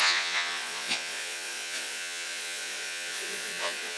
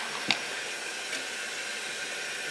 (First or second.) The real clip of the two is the second